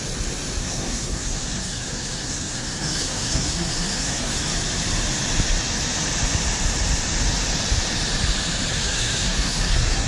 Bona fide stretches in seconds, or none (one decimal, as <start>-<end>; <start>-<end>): 0.0-0.6; 4.5-8.7